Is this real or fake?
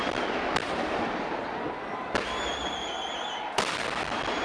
real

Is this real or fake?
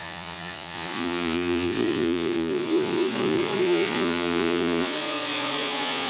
fake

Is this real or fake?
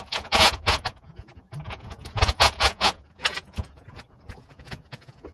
fake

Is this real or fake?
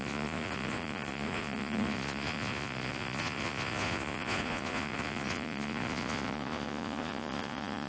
fake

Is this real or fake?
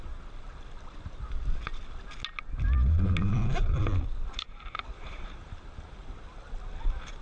real